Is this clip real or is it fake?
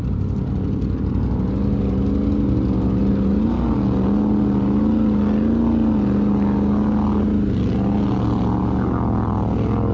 real